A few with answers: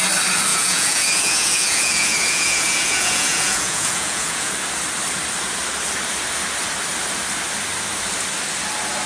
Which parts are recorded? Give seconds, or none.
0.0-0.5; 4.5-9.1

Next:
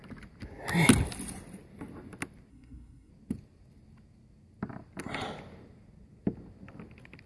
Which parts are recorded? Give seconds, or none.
0.0-2.5; 3.1-7.3

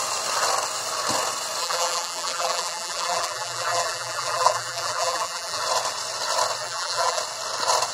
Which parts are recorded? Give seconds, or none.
0.0-1.6; 5.6-6.6; 7.2-7.9

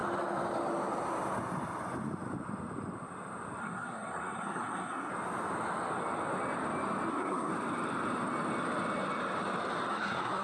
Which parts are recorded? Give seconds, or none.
0.0-3.6; 5.1-7.1; 7.5-9.9

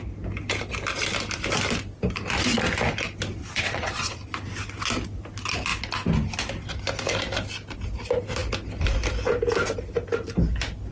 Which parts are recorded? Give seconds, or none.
0.0-3.4; 4.2-10.9

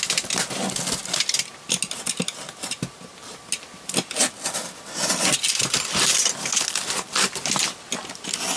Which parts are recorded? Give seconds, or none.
0.0-8.6